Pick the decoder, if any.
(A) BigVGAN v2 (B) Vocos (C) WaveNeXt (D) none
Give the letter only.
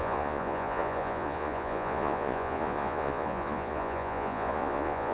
B